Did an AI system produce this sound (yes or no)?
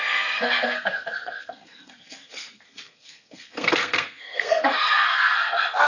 yes